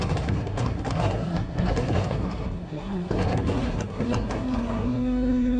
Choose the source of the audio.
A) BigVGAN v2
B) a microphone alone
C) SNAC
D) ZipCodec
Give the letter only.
C